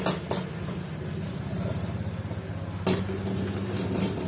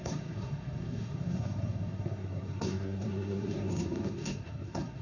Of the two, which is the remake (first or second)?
second